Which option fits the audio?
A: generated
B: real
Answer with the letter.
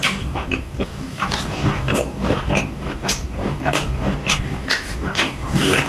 A